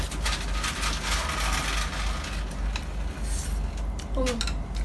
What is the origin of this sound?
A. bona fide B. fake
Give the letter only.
A